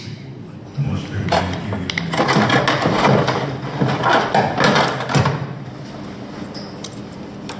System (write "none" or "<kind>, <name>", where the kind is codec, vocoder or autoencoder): none